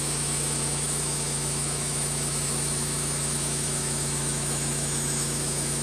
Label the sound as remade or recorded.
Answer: remade